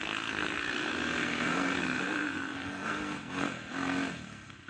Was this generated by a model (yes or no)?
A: yes